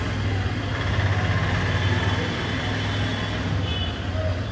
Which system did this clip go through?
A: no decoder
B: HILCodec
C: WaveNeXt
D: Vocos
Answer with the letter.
A